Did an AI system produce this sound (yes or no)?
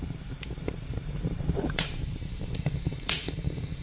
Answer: yes